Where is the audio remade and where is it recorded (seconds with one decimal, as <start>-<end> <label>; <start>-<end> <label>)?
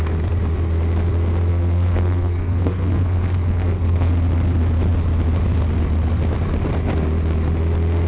0.0-1.5 recorded; 1.5-4.1 remade; 4.1-8.1 recorded